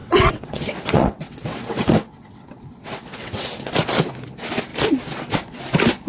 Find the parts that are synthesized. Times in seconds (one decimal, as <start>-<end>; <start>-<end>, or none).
0.0-3.7